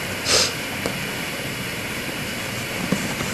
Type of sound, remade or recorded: recorded